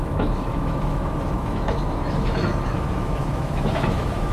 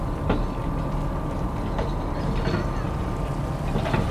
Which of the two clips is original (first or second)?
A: second